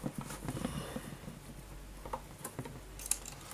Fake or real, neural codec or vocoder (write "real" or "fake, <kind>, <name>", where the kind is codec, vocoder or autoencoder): real